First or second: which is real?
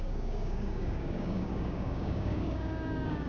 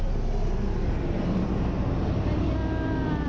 second